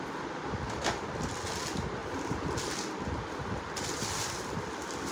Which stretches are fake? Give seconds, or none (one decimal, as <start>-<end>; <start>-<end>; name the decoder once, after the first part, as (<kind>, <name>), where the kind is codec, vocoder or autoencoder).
none